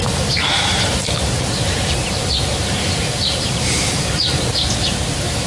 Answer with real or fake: fake